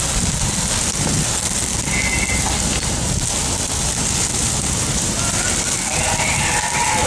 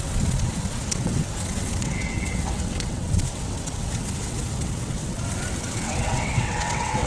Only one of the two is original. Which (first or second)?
first